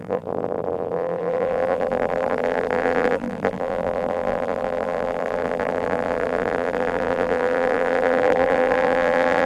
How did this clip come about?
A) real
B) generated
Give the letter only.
B